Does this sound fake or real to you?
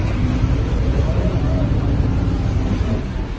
real